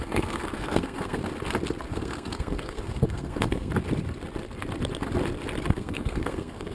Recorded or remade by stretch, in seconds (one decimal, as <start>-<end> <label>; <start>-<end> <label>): 0.0-1.2 remade; 1.2-1.9 recorded; 1.9-3.7 remade; 3.7-5.7 recorded; 5.7-6.7 remade